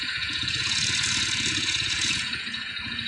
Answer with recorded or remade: remade